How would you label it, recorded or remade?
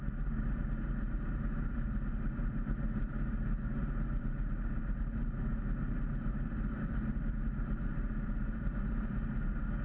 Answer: remade